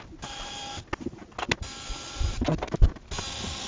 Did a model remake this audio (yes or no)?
no